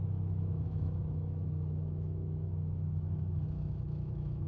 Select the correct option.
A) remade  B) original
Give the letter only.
A